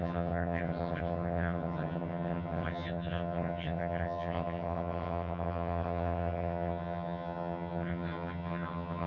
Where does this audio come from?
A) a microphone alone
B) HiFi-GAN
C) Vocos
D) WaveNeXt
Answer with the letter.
B